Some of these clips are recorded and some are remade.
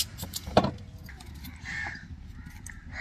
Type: remade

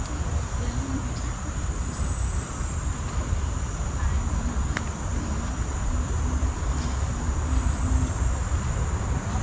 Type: recorded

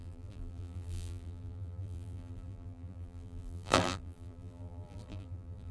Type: remade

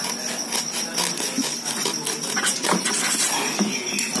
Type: recorded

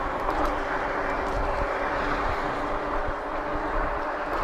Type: remade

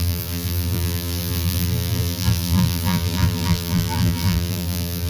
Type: remade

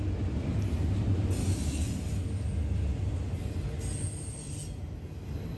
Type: recorded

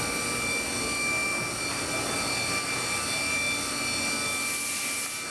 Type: recorded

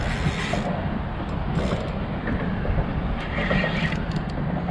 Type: recorded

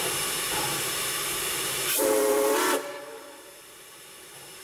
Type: remade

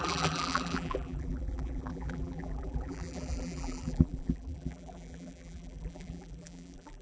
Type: remade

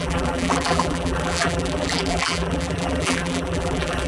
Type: remade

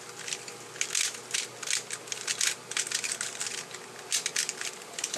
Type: recorded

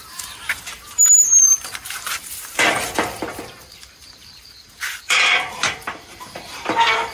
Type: remade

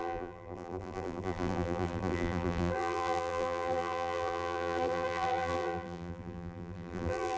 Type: remade